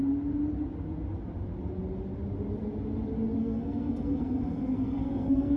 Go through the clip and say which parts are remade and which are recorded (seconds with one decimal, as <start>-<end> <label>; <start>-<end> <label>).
0.0-3.4 recorded; 3.4-5.6 remade